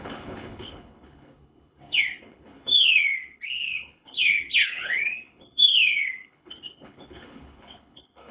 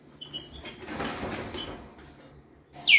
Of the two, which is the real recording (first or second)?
second